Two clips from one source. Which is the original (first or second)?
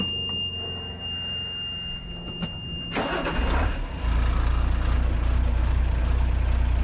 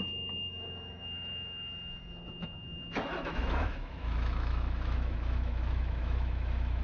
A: first